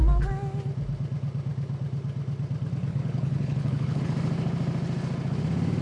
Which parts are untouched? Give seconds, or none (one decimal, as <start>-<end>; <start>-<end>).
0.0-2.9; 4.0-5.8